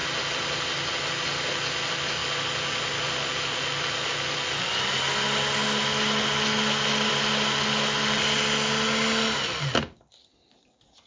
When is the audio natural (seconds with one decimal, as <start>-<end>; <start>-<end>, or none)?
0.0-11.1